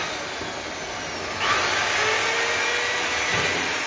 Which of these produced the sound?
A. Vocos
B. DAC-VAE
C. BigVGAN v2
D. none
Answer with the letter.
D